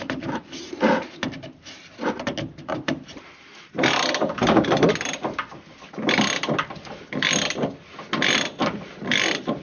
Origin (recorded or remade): recorded